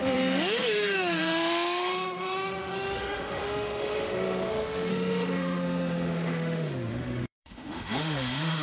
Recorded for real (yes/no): no